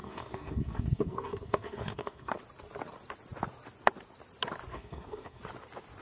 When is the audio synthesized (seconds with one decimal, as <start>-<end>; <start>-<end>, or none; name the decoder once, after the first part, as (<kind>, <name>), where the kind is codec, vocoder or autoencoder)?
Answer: 0.0-2.4 (codec, SNAC); 4.7-5.4